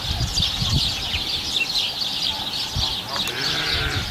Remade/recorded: recorded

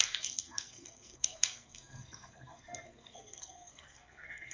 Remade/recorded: remade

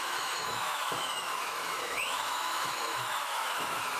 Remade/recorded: remade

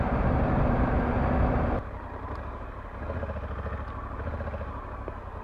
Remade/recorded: recorded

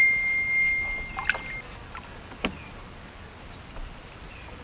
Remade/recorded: recorded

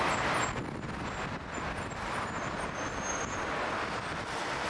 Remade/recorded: recorded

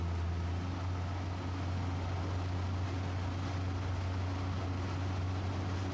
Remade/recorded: recorded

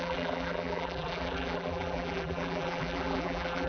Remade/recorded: remade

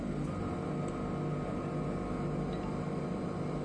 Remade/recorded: recorded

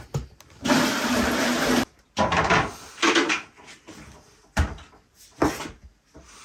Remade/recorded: recorded